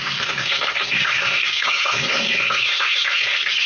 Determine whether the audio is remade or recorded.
remade